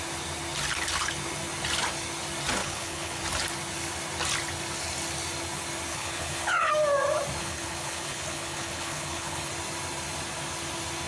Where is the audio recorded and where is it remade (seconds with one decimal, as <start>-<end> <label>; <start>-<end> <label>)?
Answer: 0.0-2.6 recorded; 2.6-3.2 remade; 3.2-5.9 recorded; 5.9-6.7 remade; 6.7-7.4 recorded; 7.4-9.5 remade; 9.5-11.1 recorded